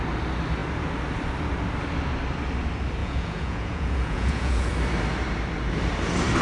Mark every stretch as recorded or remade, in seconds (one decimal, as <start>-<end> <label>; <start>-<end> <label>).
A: 0.0-3.0 recorded; 3.0-4.7 remade; 4.7-6.4 recorded